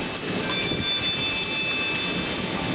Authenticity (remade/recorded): recorded